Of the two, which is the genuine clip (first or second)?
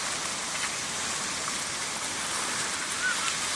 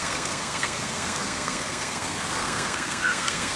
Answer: first